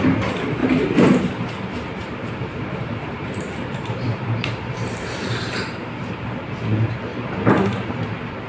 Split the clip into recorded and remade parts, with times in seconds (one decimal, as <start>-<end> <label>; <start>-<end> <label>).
0.0-0.6 recorded; 0.6-1.2 remade; 1.2-2.0 recorded; 2.0-5.9 remade; 5.9-8.5 recorded